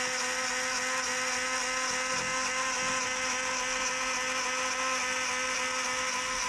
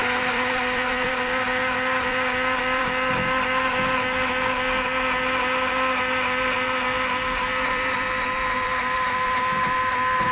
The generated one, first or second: second